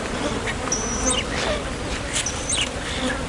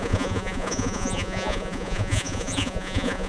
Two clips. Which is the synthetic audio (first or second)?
second